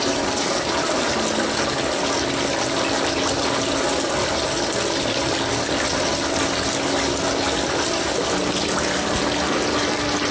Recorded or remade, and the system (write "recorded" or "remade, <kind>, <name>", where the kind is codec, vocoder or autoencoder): recorded